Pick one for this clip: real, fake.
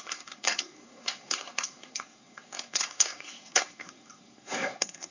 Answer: fake